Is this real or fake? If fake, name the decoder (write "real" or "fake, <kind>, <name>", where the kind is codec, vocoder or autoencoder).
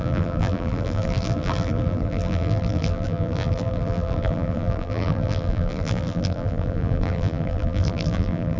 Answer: fake, vocoder, BigVGAN v2